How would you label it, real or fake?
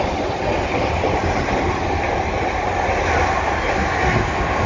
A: real